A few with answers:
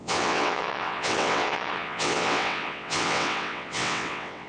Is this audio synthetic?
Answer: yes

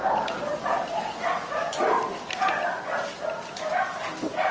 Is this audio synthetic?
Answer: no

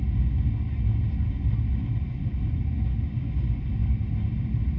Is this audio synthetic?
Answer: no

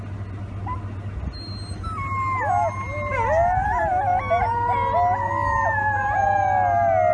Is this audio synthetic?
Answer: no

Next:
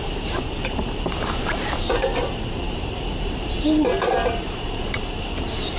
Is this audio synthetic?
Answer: yes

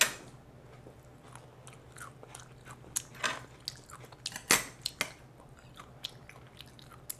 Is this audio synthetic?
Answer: no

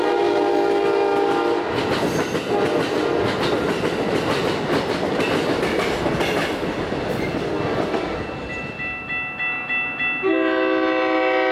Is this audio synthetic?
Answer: no